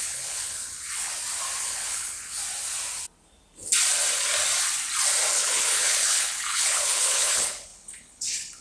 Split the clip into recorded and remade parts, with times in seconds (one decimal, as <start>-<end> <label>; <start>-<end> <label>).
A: 0.0-1.1 remade; 1.1-1.6 recorded; 1.6-2.4 remade; 2.4-5.3 recorded; 5.3-8.6 remade